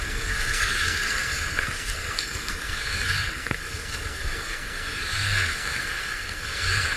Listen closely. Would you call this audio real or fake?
fake